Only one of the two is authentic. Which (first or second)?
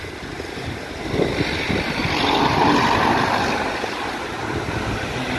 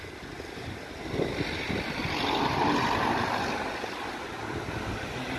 second